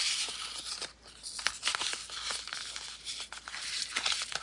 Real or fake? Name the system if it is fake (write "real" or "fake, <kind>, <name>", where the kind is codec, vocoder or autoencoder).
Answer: real